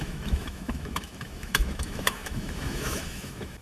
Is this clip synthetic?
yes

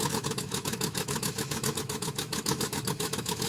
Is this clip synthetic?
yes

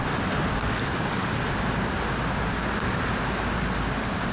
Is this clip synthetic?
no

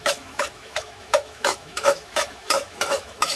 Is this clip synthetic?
yes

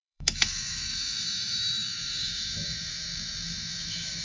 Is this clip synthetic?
yes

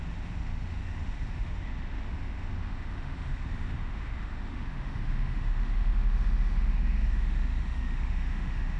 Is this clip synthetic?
yes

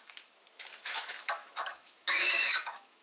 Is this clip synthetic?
yes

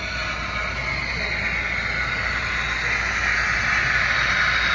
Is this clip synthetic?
no